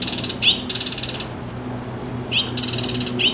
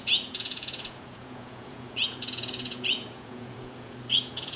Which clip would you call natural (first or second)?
first